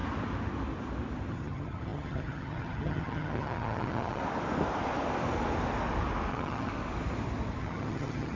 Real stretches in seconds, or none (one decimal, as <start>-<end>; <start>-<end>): 0.0-1.3; 4.2-6.3; 6.7-7.6